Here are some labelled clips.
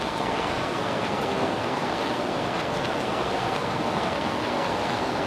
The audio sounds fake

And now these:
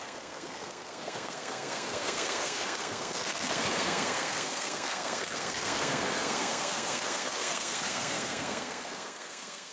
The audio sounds fake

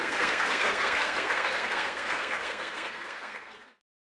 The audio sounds fake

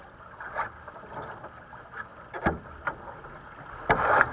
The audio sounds real